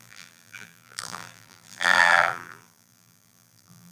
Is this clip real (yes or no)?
no